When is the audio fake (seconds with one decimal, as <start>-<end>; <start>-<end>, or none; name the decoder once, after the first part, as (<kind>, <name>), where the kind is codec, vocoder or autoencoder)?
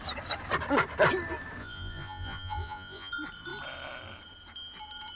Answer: 1.6-3.1 (vocoder, Vocos)